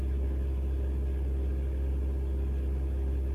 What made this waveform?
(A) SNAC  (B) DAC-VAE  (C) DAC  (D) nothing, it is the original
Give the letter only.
D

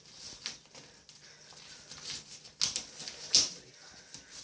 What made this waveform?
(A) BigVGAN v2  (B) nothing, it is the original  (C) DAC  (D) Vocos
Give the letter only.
B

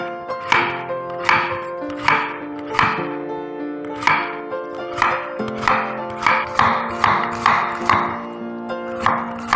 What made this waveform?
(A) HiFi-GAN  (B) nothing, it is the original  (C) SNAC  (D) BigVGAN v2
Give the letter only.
B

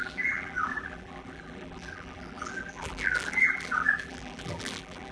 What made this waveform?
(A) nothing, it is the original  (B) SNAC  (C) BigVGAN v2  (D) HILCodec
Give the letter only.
C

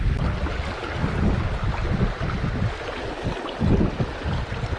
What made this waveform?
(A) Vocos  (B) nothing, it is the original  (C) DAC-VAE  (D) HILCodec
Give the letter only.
B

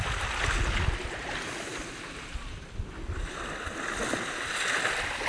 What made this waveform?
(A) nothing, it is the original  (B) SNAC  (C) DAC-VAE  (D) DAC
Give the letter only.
A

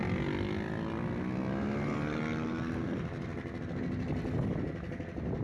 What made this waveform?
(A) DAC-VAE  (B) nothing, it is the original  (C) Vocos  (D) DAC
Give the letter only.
B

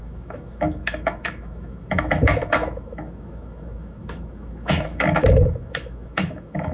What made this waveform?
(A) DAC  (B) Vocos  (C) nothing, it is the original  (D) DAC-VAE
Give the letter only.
D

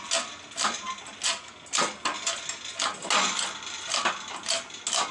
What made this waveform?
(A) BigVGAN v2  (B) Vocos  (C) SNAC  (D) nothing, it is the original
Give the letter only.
D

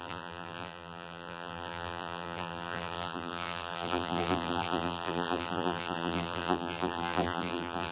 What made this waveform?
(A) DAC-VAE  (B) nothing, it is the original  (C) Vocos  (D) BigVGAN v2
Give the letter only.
D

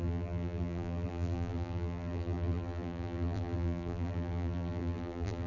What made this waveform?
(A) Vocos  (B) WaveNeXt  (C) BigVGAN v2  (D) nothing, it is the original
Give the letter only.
C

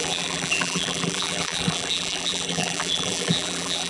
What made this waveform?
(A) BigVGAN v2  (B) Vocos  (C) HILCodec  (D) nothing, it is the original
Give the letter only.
A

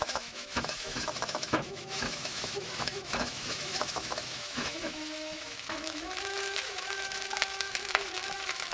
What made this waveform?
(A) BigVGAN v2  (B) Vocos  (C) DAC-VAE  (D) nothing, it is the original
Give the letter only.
C